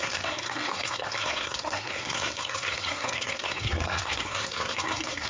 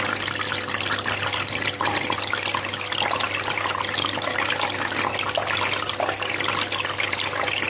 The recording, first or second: second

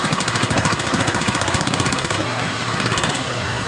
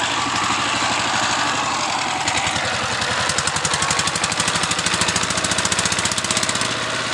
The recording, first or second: second